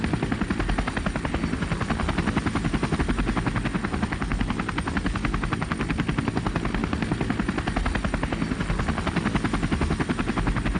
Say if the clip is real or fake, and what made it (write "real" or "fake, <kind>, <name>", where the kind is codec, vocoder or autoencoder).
real